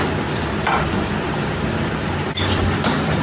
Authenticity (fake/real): real